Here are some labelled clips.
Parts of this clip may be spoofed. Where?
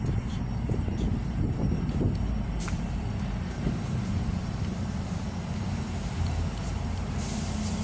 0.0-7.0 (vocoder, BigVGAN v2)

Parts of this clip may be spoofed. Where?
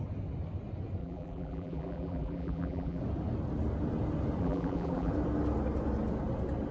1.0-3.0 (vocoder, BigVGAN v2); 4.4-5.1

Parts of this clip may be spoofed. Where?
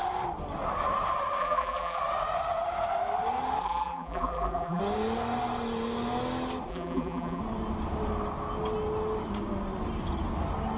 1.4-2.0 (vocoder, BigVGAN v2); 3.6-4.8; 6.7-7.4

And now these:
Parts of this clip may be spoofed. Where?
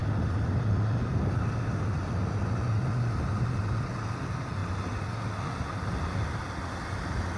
none